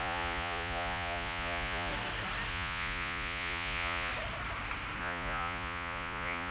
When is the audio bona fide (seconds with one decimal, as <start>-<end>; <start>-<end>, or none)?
1.9-2.5; 4.1-5.0